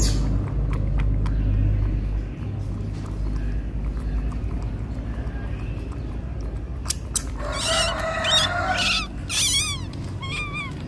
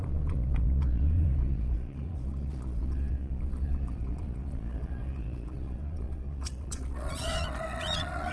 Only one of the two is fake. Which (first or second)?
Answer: second